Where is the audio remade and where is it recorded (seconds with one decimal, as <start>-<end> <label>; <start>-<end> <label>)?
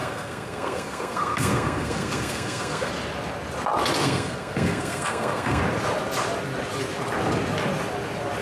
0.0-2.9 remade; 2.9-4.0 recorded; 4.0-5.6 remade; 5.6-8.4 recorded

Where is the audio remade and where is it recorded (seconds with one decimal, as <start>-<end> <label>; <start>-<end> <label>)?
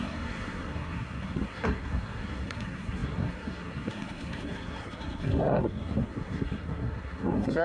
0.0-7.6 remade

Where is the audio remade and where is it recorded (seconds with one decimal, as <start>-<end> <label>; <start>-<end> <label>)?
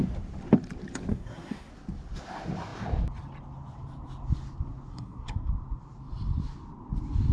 0.0-1.1 recorded; 1.1-1.7 remade; 1.7-4.9 recorded; 4.9-5.5 remade; 5.5-7.3 recorded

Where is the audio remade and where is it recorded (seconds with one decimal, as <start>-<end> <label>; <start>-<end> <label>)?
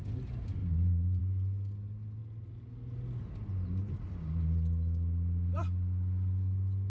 0.0-6.9 recorded